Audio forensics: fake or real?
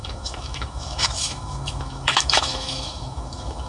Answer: fake